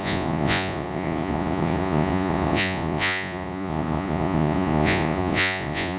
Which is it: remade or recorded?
remade